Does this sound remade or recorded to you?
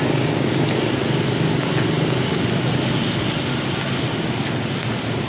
recorded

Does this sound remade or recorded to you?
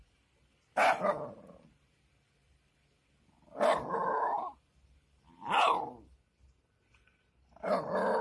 remade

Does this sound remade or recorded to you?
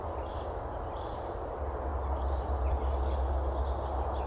recorded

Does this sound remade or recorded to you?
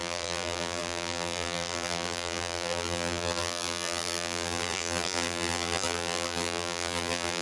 remade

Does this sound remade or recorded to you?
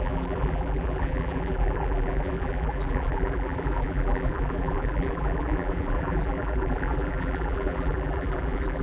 remade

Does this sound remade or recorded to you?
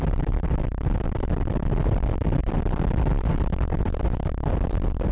recorded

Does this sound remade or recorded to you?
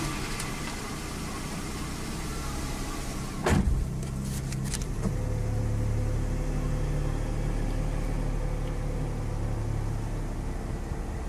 recorded